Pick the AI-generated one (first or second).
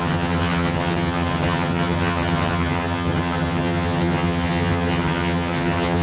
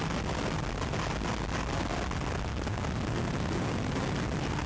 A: first